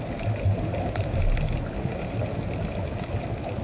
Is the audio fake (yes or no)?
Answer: no